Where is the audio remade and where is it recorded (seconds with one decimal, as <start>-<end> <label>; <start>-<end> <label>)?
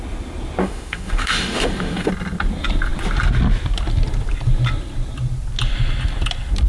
0.0-0.6 recorded; 0.6-2.1 remade; 2.1-6.7 recorded